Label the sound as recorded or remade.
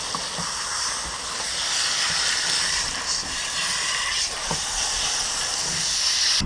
recorded